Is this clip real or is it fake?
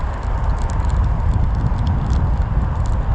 real